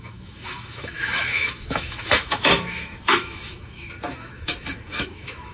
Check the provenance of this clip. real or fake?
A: fake